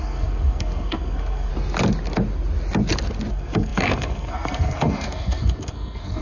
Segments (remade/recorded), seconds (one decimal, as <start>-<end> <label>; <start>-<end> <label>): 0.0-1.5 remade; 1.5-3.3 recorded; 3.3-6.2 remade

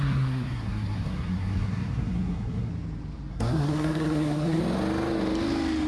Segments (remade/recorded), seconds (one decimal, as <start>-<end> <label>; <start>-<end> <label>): 0.0-2.7 remade; 2.7-3.3 recorded; 3.3-4.6 remade; 4.6-5.9 recorded

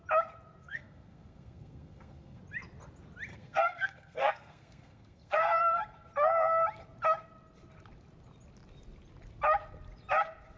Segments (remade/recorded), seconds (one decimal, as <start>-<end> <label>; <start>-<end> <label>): 0.0-0.6 recorded; 0.6-2.4 remade; 2.4-3.3 recorded; 3.3-5.8 remade; 5.8-10.6 recorded

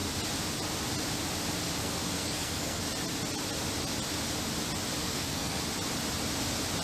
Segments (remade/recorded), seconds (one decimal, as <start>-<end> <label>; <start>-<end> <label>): 0.0-1.8 recorded; 1.8-2.8 remade; 2.8-5.0 recorded; 5.0-5.6 remade; 5.6-6.8 recorded

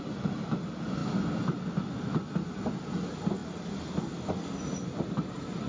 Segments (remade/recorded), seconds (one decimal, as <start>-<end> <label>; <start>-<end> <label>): 0.0-5.7 recorded

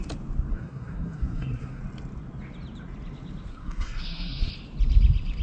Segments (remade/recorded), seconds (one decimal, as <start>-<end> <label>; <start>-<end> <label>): 0.0-0.5 recorded; 0.5-1.8 remade; 1.8-3.5 recorded; 3.5-4.5 remade; 4.5-5.4 recorded

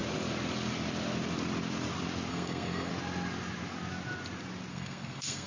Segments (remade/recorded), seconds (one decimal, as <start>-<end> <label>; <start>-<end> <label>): 0.0-2.3 recorded; 2.3-2.9 remade; 2.9-4.7 recorded; 4.7-5.5 remade